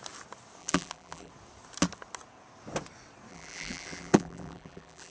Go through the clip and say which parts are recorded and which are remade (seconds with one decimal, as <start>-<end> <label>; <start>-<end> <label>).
0.0-0.6 recorded; 0.6-1.3 remade; 1.3-3.3 recorded; 3.3-5.1 remade